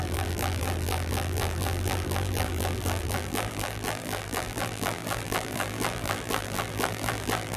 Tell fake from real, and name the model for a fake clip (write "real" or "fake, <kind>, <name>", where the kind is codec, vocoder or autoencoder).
fake, vocoder, BigVGAN v2